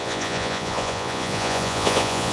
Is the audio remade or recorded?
remade